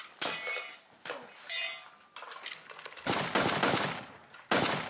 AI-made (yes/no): no